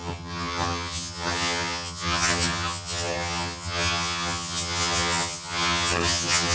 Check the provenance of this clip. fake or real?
fake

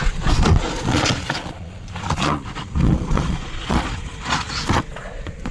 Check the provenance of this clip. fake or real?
fake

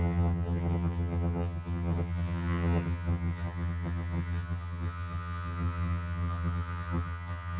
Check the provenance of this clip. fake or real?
fake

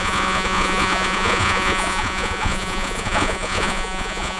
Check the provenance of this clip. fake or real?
fake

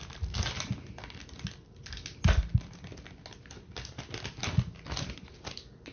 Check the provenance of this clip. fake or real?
real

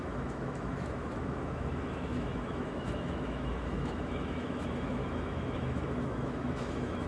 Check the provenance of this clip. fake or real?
fake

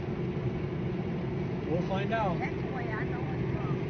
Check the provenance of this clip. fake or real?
real